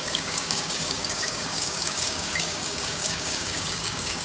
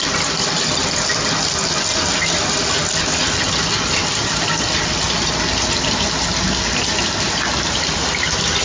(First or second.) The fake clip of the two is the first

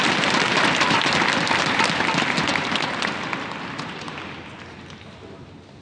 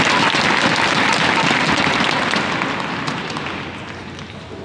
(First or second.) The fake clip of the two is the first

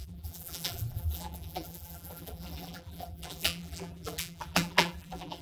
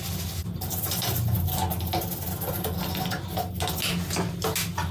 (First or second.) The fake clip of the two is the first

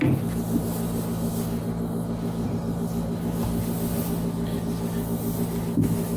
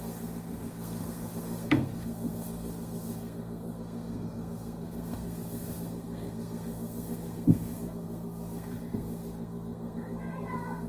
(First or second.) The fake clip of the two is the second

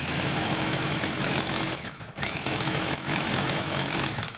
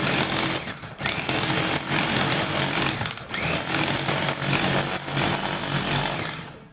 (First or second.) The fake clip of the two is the first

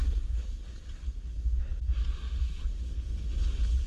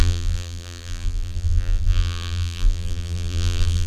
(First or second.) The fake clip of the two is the second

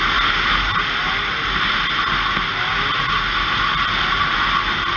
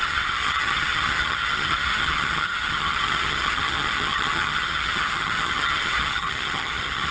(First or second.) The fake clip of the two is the second